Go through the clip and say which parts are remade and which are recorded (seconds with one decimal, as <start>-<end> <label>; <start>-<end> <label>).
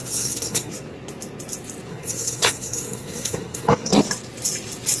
0.0-0.7 remade; 0.7-1.9 recorded; 1.9-4.0 remade; 4.0-5.0 recorded